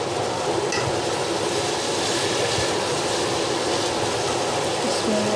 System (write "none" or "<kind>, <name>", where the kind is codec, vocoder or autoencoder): none